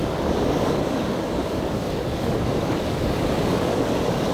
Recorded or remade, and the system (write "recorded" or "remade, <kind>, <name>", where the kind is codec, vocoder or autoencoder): remade, codec, DAC